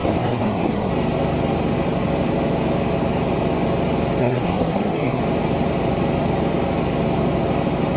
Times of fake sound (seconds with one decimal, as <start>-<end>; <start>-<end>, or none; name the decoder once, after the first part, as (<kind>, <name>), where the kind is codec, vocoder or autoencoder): 0.0-0.9 (codec, SNAC); 4.2-5.2

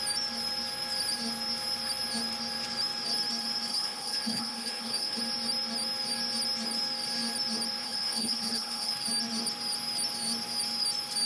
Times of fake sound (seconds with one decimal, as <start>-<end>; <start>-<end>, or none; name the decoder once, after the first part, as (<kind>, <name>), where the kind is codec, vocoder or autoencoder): 3.7-5.2 (codec, HILCodec); 7.8-8.9

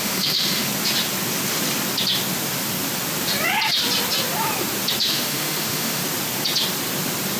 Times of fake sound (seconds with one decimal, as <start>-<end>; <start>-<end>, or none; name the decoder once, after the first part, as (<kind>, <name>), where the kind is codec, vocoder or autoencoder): 0.0-0.7 (autoencoder, DAC-VAE); 5.1-6.0

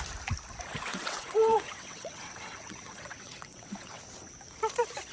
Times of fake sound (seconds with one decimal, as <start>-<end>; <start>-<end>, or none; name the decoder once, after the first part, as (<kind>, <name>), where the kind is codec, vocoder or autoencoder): 0.9-4.0 (vocoder, WaveNeXt)

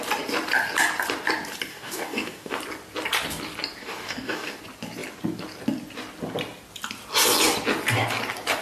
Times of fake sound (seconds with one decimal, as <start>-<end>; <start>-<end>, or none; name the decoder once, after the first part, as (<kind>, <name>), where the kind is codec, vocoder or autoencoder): 1.7-2.6 (codec, DAC); 3.8-4.6

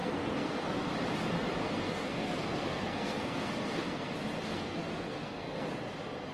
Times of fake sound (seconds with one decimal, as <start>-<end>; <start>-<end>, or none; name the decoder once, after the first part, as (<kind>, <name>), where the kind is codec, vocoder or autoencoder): 0.0-0.9 (codec, SNAC); 1.6-4.1; 4.5-5.7